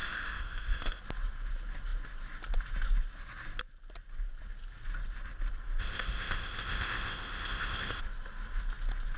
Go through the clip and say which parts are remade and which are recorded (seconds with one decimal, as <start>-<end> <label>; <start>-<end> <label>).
0.0-1.0 remade; 1.0-5.8 recorded; 5.8-8.0 remade; 8.0-9.2 recorded